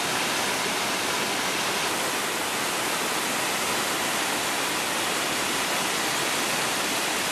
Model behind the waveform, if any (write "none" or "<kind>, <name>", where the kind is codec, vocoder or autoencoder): none